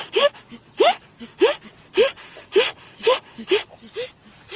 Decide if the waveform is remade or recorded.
recorded